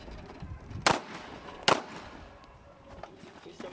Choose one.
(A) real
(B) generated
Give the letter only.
A